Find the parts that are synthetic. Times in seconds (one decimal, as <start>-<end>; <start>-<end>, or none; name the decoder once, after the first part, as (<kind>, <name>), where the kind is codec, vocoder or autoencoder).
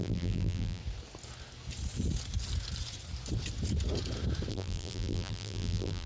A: 0.0-0.8 (vocoder, BigVGAN v2); 4.5-6.1